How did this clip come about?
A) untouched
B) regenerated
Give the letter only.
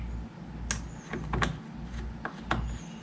A